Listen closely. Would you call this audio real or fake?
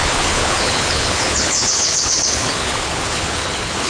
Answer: fake